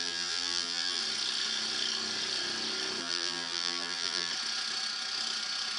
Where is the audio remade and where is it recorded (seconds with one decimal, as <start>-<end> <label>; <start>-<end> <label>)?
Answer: 0.0-1.0 remade; 1.0-3.0 recorded; 3.0-4.3 remade; 4.3-5.8 recorded